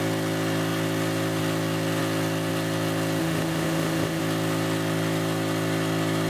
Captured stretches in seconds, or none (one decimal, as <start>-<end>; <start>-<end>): 0.0-3.2; 4.2-6.3